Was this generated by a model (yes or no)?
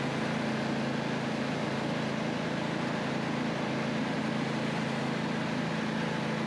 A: no